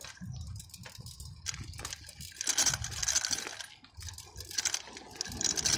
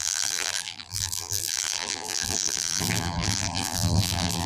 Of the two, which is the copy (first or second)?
second